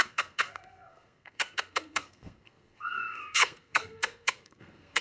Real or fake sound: fake